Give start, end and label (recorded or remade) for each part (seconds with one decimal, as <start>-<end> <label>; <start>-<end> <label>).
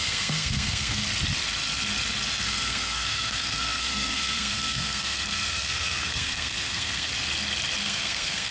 0.0-1.0 remade; 1.0-2.4 recorded; 2.4-7.1 remade; 7.1-7.8 recorded; 7.8-8.5 remade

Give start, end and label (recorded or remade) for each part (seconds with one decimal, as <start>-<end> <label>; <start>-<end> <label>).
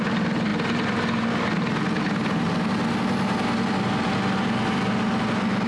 0.0-5.7 recorded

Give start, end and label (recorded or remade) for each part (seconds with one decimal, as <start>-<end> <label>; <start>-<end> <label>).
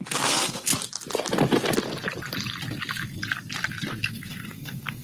0.0-0.7 remade; 0.7-3.7 recorded; 3.7-5.0 remade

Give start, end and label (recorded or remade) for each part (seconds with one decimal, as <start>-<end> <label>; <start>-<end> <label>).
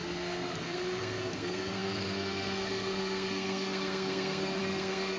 0.0-5.2 remade